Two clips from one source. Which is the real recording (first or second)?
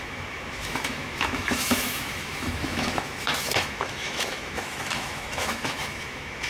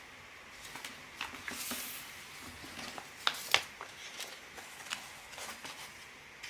second